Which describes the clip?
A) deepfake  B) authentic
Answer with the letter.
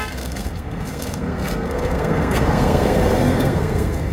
A